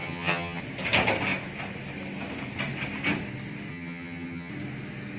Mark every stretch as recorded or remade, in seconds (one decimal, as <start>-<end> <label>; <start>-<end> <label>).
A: 0.0-0.6 remade; 0.6-3.7 recorded; 3.7-4.5 remade; 4.5-5.2 recorded